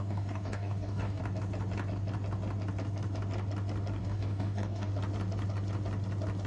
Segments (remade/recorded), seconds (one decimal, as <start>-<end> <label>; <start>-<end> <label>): 0.0-1.2 remade; 1.2-4.0 recorded; 4.0-4.9 remade; 4.9-6.5 recorded